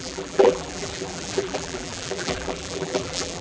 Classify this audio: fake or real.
fake